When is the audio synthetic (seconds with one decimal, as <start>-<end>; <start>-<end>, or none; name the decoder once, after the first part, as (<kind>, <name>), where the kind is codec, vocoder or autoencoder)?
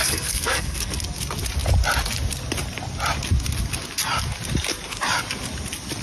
0.0-1.0 (codec, SNAC)